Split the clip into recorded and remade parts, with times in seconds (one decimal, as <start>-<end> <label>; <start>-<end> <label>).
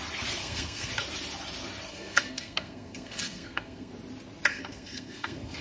0.0-0.4 recorded; 0.4-0.9 remade; 0.9-1.9 recorded; 1.9-3.9 remade; 3.9-4.5 recorded; 4.5-5.6 remade